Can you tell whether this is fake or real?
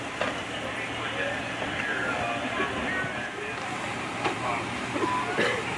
real